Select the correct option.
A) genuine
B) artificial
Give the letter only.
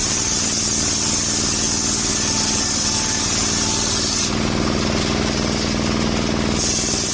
A